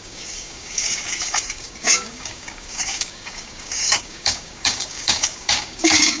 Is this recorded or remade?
remade